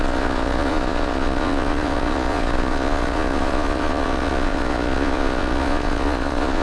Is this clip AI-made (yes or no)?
yes